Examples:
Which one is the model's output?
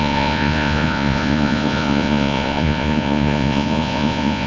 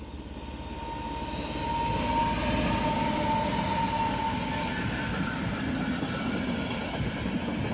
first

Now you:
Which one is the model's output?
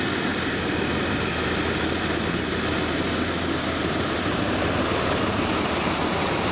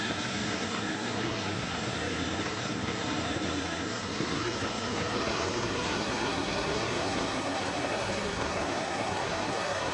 second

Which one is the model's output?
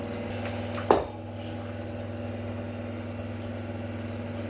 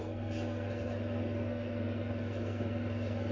second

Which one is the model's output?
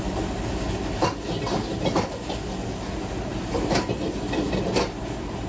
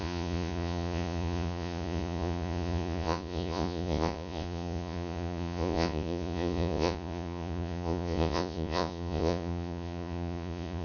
second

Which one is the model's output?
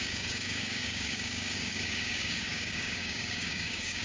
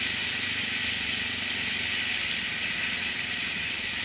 first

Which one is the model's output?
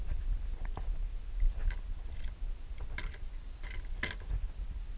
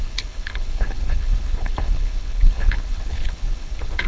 second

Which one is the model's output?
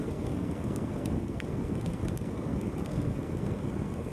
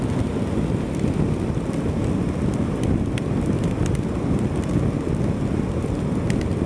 first